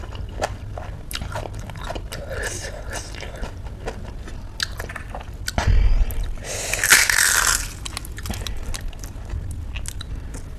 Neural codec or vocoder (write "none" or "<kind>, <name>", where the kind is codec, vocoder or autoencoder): none